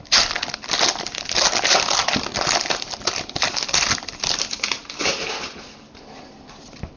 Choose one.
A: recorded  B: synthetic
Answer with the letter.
A